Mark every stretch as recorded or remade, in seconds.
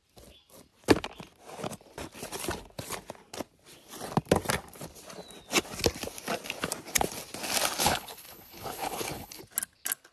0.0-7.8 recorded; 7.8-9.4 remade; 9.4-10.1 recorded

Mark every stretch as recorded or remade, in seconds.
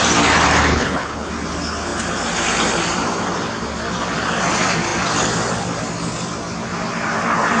0.0-0.7 recorded; 0.7-1.3 remade; 1.3-7.6 recorded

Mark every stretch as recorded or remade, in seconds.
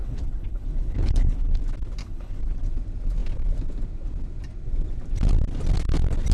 0.0-1.6 remade; 1.6-2.0 recorded; 2.0-2.6 remade; 2.6-6.3 recorded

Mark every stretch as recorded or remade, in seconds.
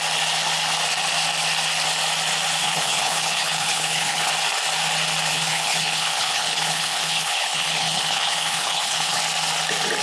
0.0-2.6 recorded; 2.6-4.3 remade; 4.3-5.3 recorded; 5.3-9.2 remade; 9.2-10.0 recorded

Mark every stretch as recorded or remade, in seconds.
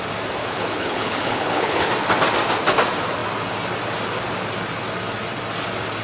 0.0-0.4 recorded; 0.4-1.9 remade; 1.9-6.0 recorded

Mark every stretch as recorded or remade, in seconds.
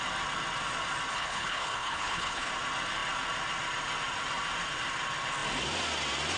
0.0-1.1 recorded; 1.1-2.5 remade; 2.5-6.4 recorded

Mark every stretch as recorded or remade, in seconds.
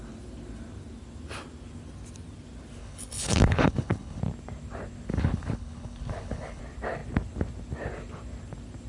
0.0-2.8 recorded; 2.8-4.2 remade; 4.2-5.1 recorded; 5.1-6.6 remade; 6.6-8.9 recorded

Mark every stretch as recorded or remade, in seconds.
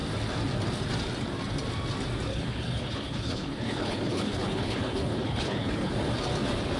0.0-2.3 recorded; 2.3-5.9 remade; 5.9-6.8 recorded